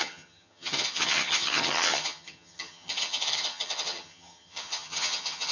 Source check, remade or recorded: remade